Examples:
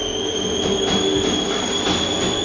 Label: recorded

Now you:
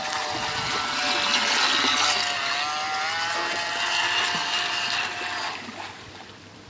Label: recorded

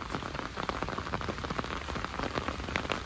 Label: recorded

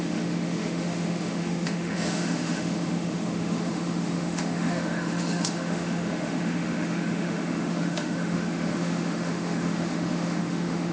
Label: remade